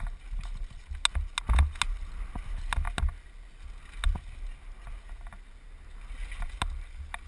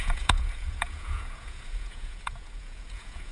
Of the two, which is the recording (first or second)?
first